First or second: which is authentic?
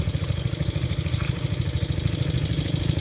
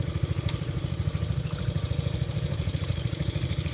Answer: first